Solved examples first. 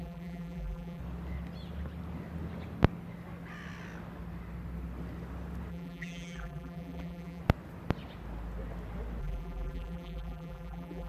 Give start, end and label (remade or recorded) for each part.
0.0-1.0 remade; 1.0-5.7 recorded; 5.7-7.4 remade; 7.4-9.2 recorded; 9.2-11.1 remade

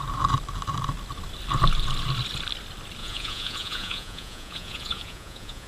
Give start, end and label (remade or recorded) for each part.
0.0-3.0 recorded; 3.0-5.7 remade

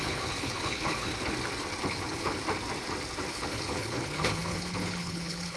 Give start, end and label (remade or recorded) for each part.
0.0-1.1 remade; 1.1-1.8 recorded; 1.8-2.4 remade; 2.4-3.3 recorded; 3.3-5.6 remade

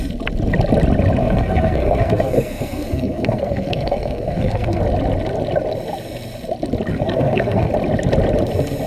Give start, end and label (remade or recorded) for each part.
0.0-1.2 recorded; 1.2-4.8 remade; 4.8-6.9 recorded; 6.9-7.7 remade; 7.7-8.9 recorded

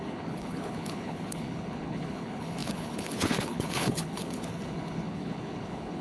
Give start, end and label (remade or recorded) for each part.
0.0-6.0 remade